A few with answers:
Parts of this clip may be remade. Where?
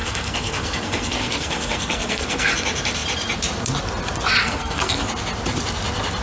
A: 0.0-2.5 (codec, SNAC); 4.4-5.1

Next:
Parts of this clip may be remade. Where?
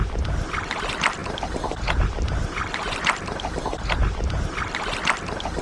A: none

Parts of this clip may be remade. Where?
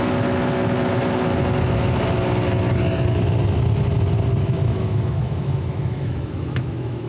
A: 4.4-7.1 (autoencoder, DAC-VAE)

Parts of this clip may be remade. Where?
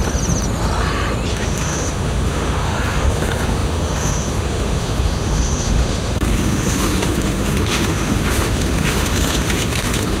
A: 1.3-10.2 (autoencoder, DAC-VAE)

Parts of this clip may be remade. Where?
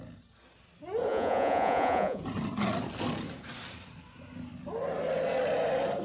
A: 1.1-2.2 (vocoder, Vocos)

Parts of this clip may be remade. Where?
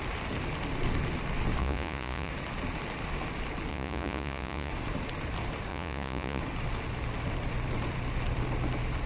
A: 1.6-2.3 (vocoder, Vocos); 3.7-4.7; 5.7-6.4